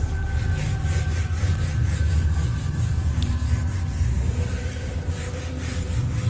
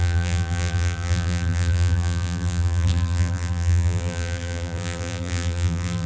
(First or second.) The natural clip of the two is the first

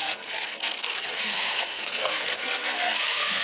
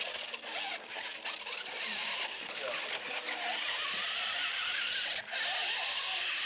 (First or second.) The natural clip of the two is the second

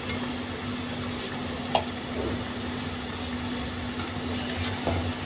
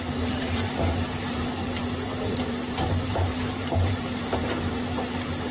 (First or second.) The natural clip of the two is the first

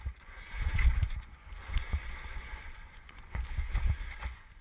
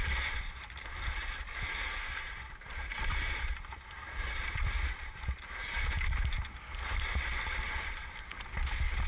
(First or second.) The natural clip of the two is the second